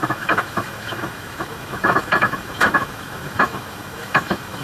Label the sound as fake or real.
fake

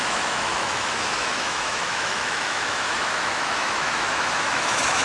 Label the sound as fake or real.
fake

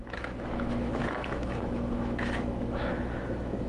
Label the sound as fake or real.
fake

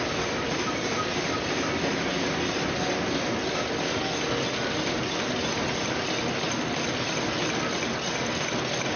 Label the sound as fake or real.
real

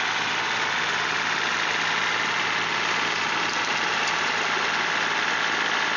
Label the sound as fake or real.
real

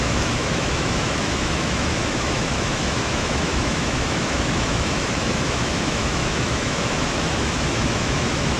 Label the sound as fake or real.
fake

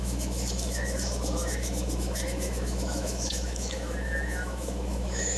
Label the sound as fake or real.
fake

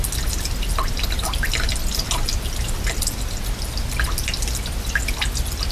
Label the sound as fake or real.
real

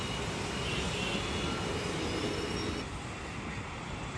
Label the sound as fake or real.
real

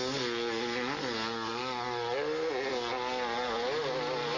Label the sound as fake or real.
real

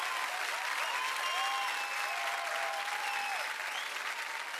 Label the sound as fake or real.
real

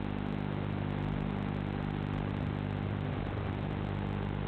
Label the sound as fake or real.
real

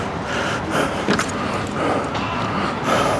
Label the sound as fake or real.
real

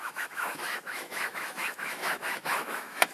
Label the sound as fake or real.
fake